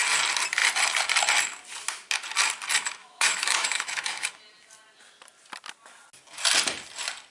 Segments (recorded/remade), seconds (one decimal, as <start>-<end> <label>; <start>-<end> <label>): 0.0-3.0 recorded; 3.0-4.3 remade; 4.3-7.3 recorded

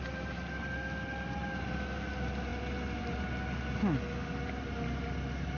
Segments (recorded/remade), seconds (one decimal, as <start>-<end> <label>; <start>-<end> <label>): 0.0-5.6 recorded

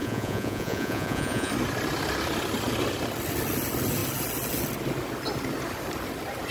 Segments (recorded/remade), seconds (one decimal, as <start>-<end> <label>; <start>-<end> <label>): 0.0-1.5 remade; 1.5-6.5 recorded

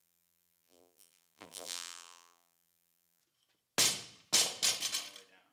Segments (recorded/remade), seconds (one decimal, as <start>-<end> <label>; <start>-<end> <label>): 0.0-3.2 remade; 3.2-5.5 recorded

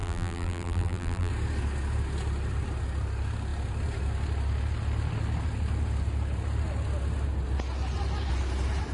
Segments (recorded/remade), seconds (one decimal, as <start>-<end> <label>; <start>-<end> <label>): 0.0-1.3 remade; 1.3-8.9 recorded

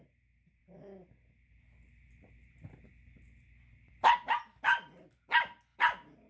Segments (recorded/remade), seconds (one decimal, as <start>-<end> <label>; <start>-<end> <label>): 0.0-6.3 recorded

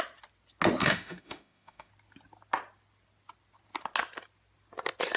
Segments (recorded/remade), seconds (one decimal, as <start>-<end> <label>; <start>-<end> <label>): 0.0-0.8 recorded; 0.8-1.9 remade; 1.9-5.2 recorded

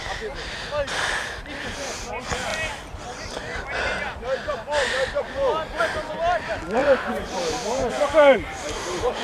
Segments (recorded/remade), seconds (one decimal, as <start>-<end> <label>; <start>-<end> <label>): 0.0-6.8 recorded; 6.8-7.9 remade; 7.9-9.2 recorded